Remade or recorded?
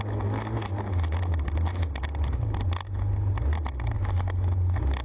recorded